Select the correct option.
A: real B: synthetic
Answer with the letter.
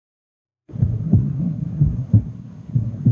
B